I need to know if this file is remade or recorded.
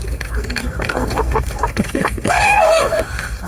remade